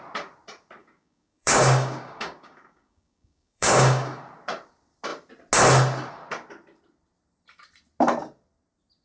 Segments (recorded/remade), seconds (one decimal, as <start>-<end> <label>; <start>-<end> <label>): 0.0-0.8 recorded; 0.8-4.2 remade; 4.2-9.0 recorded